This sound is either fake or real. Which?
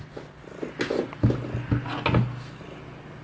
real